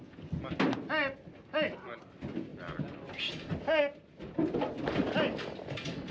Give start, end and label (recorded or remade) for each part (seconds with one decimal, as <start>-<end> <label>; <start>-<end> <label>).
0.0-6.1 recorded